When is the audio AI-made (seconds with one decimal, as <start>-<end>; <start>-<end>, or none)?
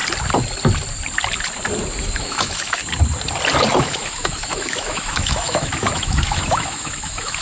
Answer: 2.2-2.8; 3.7-7.4